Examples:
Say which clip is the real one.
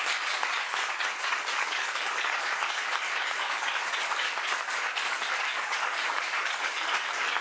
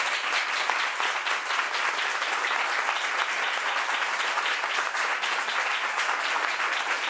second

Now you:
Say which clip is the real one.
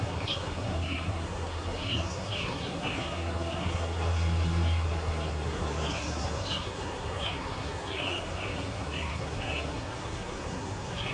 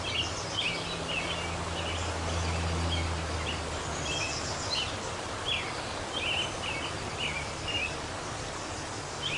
second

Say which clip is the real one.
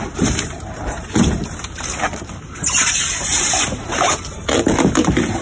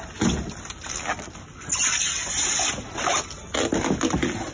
second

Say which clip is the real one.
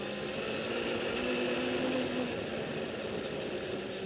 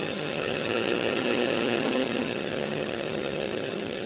first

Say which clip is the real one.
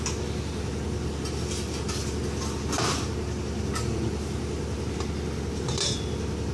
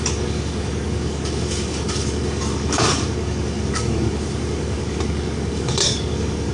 first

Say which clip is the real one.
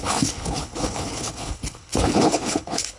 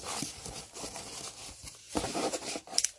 second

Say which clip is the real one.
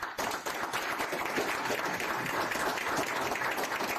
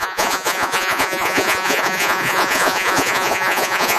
first